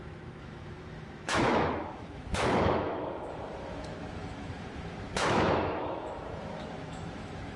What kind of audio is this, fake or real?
fake